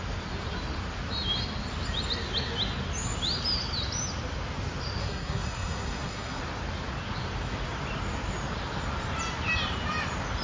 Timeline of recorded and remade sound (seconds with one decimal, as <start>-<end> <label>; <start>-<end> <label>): 0.0-5.0 recorded; 5.0-6.4 remade; 6.4-10.4 recorded